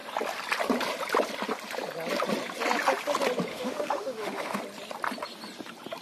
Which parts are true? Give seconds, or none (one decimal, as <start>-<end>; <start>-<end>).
0.0-3.5; 4.6-6.0